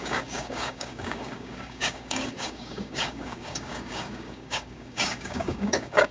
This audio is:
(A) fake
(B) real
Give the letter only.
A